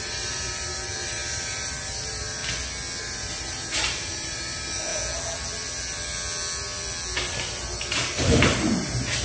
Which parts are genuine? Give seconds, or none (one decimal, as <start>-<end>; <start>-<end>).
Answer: 2.4-3.0; 4.9-7.4